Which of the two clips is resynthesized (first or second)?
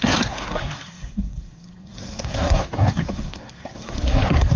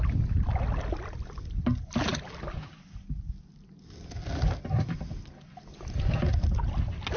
first